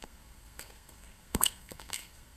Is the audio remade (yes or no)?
yes